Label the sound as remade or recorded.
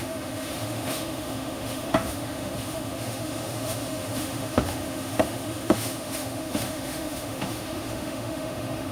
remade